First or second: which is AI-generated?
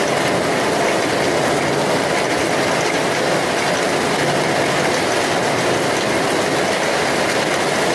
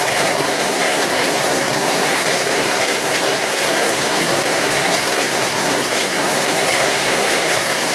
second